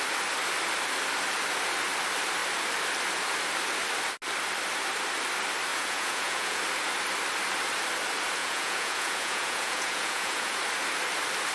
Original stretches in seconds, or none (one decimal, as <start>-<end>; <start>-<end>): 0.0-5.7; 6.6-8.4; 10.6-11.5